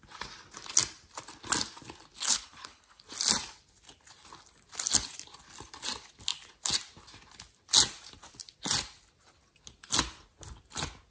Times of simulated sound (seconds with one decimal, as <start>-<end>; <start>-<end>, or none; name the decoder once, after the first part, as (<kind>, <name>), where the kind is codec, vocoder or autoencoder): 2.2-3.0 (codec, HILCodec)